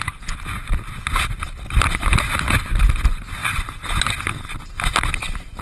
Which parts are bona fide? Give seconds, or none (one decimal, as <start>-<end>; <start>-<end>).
0.0-5.6